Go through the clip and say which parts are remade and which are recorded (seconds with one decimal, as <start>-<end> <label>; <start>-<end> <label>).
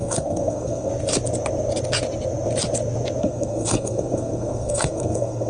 0.0-0.9 remade; 0.9-3.2 recorded; 3.2-5.5 remade